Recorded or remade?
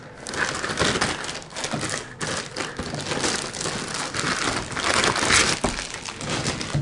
recorded